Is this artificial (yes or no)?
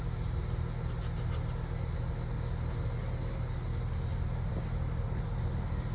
no